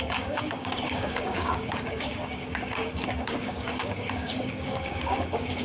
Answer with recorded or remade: remade